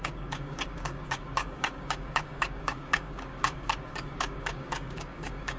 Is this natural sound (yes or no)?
no